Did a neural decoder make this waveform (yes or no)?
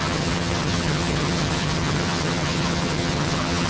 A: yes